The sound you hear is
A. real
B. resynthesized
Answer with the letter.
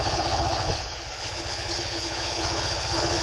B